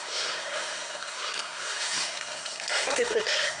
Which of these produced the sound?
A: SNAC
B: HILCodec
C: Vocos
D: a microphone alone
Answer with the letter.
A